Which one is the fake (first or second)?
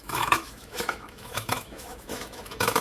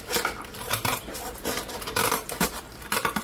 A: first